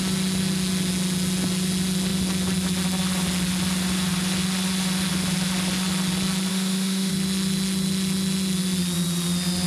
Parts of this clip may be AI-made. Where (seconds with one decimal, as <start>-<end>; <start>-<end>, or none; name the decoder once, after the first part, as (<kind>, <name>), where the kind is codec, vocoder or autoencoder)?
6.5-7.1 (autoencoder, DAC-VAE)